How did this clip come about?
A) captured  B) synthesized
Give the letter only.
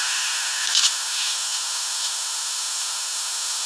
B